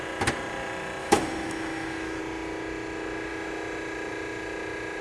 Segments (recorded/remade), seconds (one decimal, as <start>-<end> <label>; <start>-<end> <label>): 0.0-1.0 recorded; 1.0-2.2 remade; 2.2-5.0 recorded